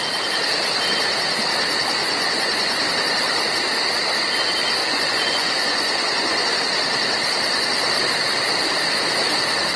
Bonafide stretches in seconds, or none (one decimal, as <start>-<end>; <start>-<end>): 0.0-2.0; 2.9-4.8; 6.6-9.8